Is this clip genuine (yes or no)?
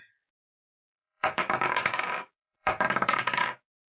no